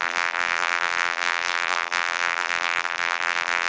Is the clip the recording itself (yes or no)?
no